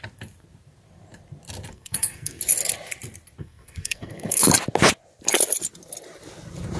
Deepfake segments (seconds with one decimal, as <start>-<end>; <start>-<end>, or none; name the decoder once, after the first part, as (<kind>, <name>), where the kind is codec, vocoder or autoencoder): 1.7-2.4 (codec, SNAC); 3.4-4.5